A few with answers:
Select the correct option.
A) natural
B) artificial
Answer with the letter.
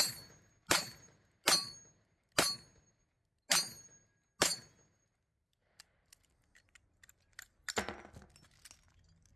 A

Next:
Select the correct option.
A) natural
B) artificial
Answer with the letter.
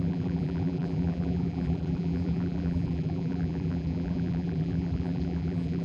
B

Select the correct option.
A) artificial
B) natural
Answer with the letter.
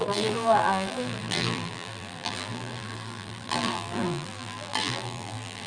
A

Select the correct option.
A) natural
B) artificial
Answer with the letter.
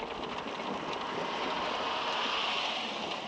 A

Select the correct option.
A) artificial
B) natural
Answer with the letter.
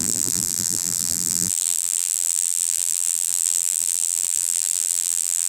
A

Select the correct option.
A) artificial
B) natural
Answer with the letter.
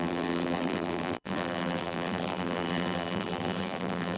A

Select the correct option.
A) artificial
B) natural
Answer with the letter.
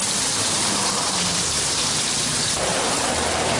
A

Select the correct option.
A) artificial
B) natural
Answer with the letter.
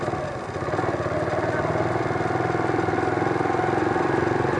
B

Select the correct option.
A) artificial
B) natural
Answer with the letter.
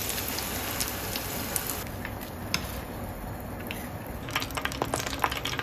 B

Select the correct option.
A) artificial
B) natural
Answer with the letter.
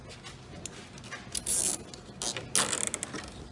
B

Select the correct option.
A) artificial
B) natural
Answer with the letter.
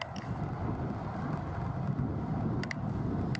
B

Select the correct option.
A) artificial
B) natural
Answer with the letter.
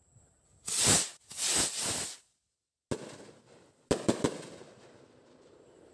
B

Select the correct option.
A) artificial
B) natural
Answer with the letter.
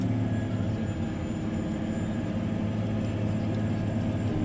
B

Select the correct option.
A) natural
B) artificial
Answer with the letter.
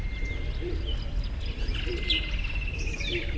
B